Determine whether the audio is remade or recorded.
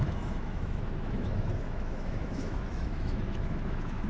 remade